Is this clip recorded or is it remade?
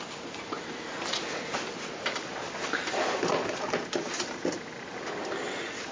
recorded